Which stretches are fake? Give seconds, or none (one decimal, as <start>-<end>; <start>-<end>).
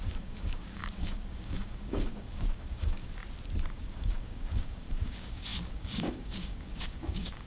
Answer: 0.0-3.2; 3.7-7.5